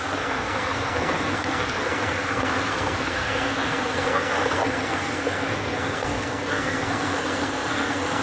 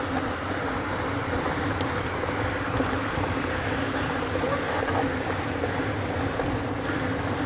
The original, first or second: second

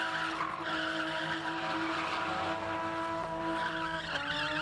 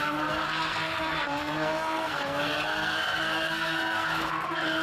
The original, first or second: first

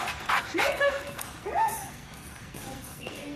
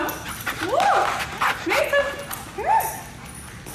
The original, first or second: second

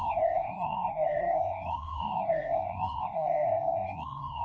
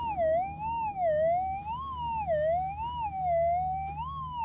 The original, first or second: second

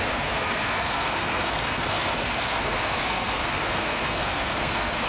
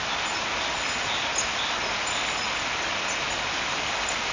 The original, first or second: second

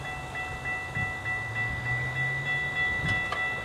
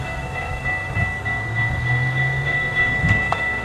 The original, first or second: first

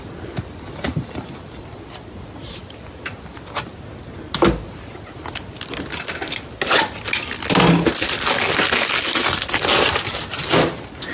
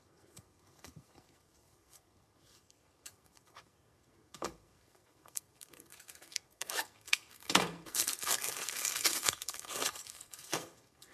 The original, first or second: first